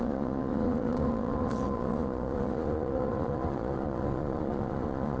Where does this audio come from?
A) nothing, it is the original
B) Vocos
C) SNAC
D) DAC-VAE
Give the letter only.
B